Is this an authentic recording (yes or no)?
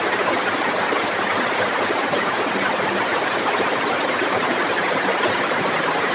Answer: yes